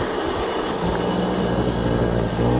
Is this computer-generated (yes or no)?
no